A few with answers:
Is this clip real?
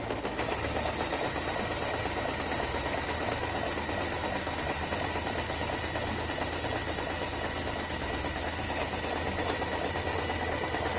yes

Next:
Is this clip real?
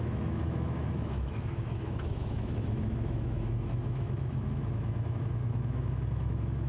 no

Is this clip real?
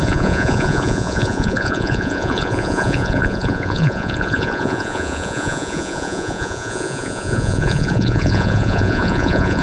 no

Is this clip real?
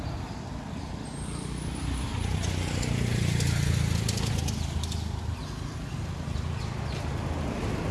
yes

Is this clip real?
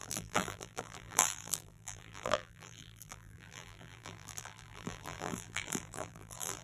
no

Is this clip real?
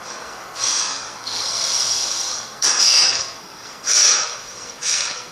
no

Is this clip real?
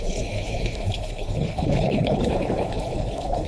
no